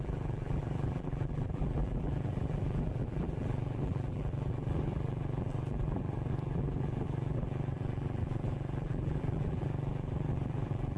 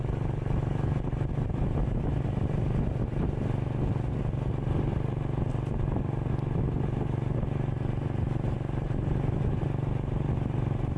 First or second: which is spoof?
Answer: first